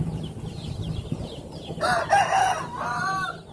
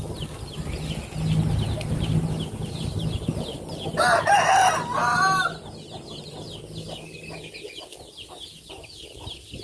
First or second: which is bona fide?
second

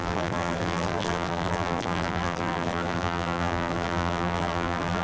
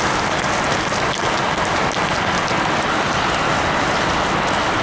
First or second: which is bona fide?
second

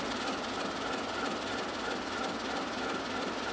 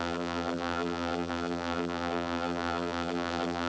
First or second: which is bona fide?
first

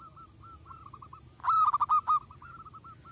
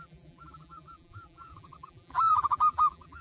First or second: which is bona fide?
first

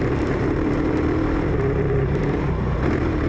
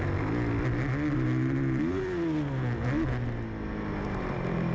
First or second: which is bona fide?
second